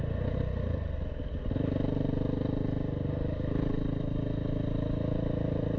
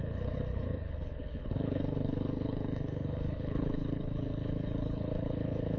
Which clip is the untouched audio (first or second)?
first